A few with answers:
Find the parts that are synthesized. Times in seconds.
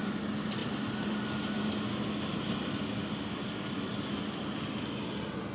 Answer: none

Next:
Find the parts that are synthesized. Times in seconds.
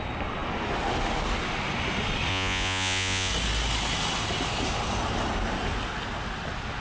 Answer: 2.3-3.3 (vocoder, Vocos)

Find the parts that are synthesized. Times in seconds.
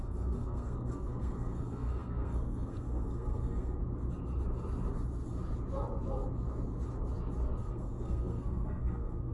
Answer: 0.0-3.8 (codec, SNAC); 7.6-9.3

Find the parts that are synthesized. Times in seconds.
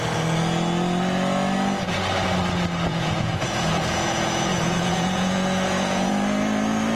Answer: 2.9-6.1 (vocoder, Vocos)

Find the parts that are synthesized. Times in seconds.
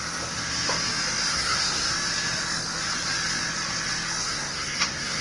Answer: 1.3-1.9 (codec, SNAC); 4.2-5.2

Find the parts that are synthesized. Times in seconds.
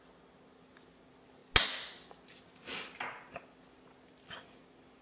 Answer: none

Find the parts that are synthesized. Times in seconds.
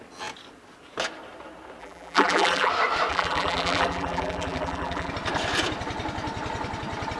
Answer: 1.8-2.7 (vocoder, BigVGAN v2); 3.1-5.1